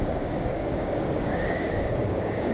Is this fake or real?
fake